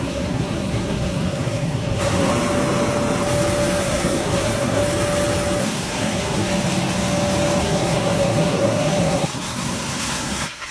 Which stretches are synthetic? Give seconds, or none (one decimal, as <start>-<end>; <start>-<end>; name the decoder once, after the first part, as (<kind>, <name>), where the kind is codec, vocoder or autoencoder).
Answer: 0.0-2.3 (codec, SNAC); 3.8-4.8; 5.6-6.5; 7.6-10.7